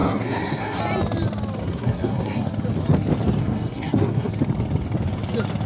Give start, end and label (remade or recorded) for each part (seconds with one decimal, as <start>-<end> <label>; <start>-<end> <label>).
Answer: 0.0-0.8 remade; 0.8-1.6 recorded; 1.6-2.5 remade; 2.5-3.4 recorded; 3.4-4.3 remade; 4.3-5.7 recorded